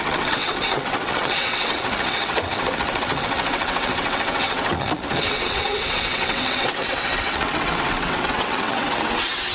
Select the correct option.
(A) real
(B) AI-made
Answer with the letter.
B